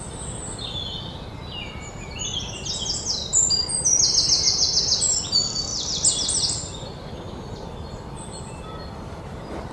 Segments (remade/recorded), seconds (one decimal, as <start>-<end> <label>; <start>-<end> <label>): 0.0-9.7 recorded